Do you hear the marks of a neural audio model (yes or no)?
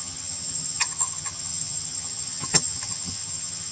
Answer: yes